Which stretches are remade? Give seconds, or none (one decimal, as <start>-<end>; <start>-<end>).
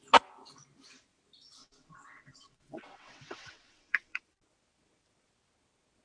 1.6-4.2